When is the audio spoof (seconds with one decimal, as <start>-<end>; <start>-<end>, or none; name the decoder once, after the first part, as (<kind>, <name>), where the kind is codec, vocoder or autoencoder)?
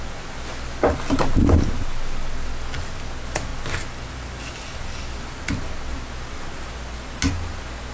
none